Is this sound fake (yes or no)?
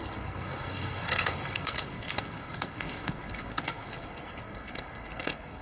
yes